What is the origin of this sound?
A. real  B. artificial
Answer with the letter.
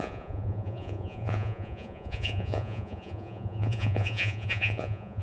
B